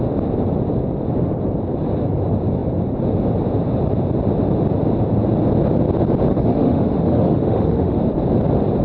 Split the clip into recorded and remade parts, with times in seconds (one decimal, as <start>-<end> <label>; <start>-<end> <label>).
0.0-6.3 recorded; 6.3-8.0 remade; 8.0-8.8 recorded